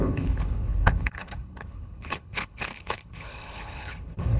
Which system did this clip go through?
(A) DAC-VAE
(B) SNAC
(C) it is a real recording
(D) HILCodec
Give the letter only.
D